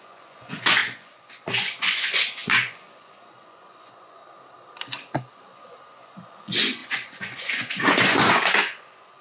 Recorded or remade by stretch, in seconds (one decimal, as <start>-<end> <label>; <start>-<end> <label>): 0.0-4.2 remade; 4.2-5.3 recorded; 5.3-9.2 remade